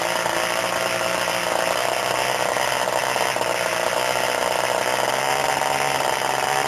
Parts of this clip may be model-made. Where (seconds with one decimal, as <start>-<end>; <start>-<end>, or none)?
none